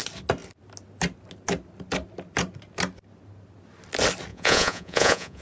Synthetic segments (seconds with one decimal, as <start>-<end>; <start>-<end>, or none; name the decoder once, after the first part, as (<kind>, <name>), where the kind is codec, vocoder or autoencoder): 4.3-5.4 (vocoder, Vocos)